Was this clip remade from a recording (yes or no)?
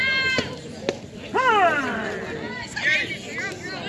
no